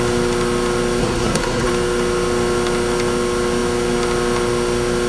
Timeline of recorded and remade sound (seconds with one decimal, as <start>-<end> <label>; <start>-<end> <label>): 0.0-1.0 recorded; 1.0-1.7 remade; 1.7-5.1 recorded